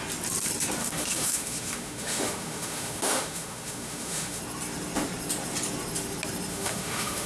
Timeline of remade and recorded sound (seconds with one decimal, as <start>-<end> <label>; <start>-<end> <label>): 0.0-0.8 recorded; 0.8-4.4 remade; 4.4-6.5 recorded; 6.5-7.3 remade

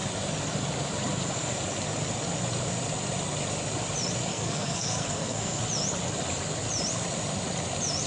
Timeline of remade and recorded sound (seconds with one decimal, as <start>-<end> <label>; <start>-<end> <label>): 0.0-4.3 recorded; 4.3-5.6 remade; 5.6-8.1 recorded

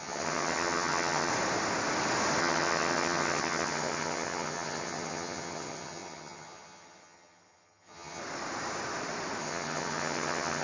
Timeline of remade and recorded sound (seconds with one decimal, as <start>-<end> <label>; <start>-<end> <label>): 0.0-1.3 remade; 1.3-2.4 recorded; 2.4-8.2 remade; 8.2-9.4 recorded; 9.4-10.6 remade

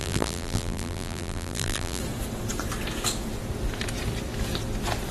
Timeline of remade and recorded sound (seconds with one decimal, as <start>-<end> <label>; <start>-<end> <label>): 0.0-2.0 remade; 2.0-5.1 recorded